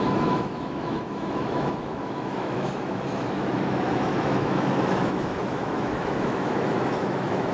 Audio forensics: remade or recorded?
remade